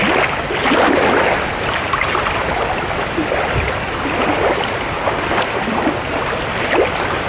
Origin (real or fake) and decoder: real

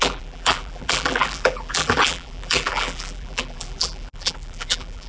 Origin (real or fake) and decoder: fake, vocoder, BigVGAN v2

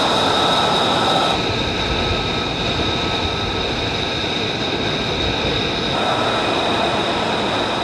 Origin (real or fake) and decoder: real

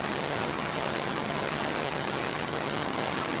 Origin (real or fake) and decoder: fake, vocoder, HiFi-GAN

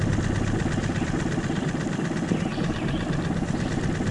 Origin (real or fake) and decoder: real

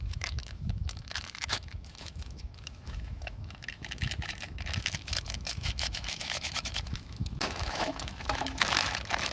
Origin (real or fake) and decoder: fake, autoencoder, DAC-VAE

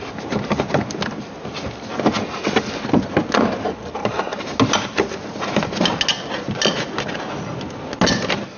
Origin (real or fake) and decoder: real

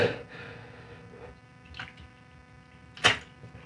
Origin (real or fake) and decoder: real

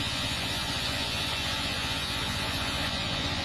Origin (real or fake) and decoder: fake, vocoder, Vocos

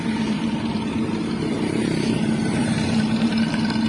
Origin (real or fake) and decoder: fake, vocoder, BigVGAN v2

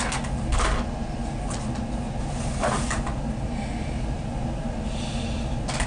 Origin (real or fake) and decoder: real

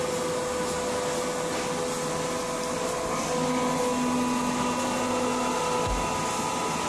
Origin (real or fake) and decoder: real